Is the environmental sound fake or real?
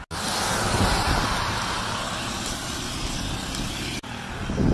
real